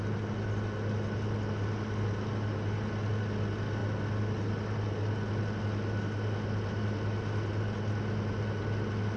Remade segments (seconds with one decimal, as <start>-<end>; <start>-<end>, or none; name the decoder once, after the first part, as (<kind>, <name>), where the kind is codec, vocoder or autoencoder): none